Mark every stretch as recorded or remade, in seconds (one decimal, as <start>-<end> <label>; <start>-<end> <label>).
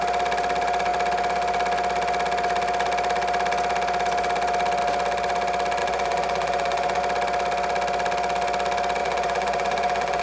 0.0-5.8 recorded; 5.8-7.0 remade; 7.0-9.0 recorded; 9.0-10.2 remade